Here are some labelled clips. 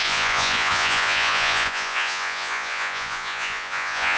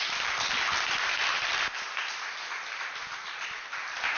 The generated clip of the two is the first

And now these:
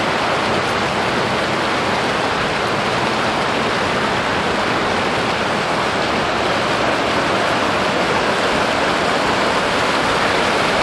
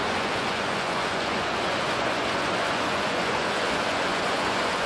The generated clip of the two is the second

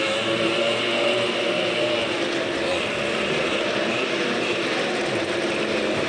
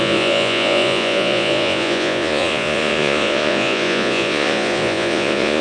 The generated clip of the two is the second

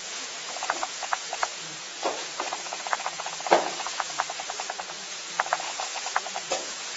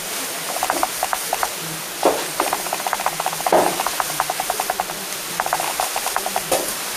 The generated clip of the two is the first